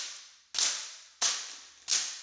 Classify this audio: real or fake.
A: real